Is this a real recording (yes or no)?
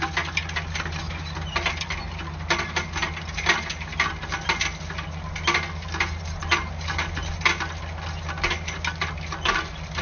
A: yes